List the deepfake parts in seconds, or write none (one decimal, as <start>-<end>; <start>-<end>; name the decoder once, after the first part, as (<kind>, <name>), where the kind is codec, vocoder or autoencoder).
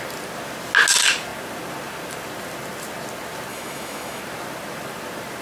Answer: 3.5-4.2 (autoencoder, DAC-VAE)